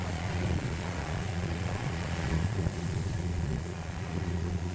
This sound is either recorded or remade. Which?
remade